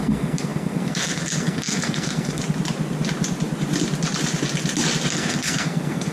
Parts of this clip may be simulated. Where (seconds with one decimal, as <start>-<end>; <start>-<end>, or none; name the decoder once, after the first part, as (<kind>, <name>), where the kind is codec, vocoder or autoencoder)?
0.0-2.4 (codec, SNAC); 5.1-6.1